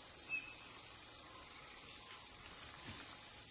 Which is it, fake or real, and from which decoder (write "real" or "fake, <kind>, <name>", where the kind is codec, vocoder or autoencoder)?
real